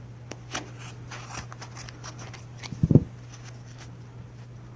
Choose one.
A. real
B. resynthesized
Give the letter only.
A